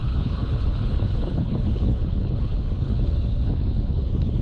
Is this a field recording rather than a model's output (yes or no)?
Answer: no